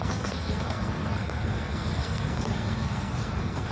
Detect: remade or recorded remade